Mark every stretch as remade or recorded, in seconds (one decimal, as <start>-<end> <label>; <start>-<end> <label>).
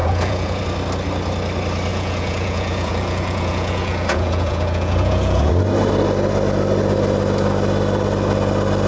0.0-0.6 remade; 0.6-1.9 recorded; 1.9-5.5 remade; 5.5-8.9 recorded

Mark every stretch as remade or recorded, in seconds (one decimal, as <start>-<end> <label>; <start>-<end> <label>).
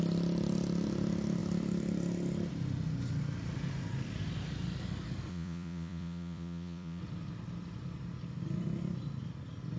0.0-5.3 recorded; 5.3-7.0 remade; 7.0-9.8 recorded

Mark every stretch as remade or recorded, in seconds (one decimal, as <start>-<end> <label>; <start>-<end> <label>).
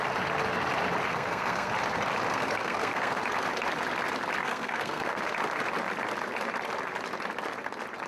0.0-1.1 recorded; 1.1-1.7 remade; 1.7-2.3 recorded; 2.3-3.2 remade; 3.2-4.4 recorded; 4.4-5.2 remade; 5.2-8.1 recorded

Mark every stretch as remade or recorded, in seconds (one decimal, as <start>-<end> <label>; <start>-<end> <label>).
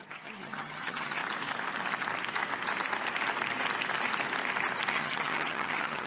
0.0-1.2 remade; 1.2-4.9 recorded; 4.9-6.1 remade